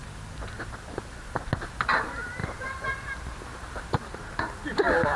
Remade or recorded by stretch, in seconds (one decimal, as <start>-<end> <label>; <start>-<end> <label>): 0.0-5.2 recorded